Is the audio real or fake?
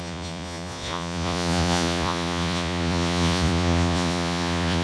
fake